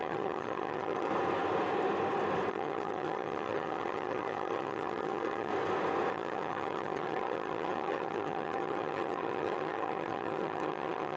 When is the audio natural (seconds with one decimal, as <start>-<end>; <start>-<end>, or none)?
1.1-2.5; 5.5-6.1